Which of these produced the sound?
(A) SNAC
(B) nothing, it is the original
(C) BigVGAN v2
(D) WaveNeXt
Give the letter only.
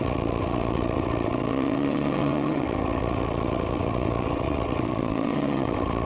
D